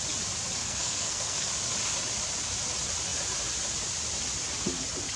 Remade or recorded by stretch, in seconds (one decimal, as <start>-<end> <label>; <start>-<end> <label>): 0.0-0.6 recorded; 0.6-1.5 remade; 1.5-5.2 recorded